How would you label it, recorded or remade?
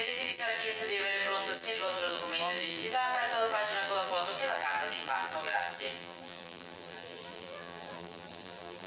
remade